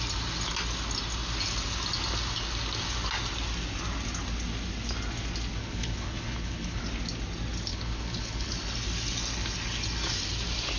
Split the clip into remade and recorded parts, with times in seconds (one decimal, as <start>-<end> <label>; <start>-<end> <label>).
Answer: 0.0-5.6 recorded; 5.6-6.8 remade; 6.8-7.7 recorded; 7.7-8.5 remade; 8.5-10.8 recorded